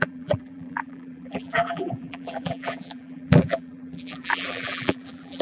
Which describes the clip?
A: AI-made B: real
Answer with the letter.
A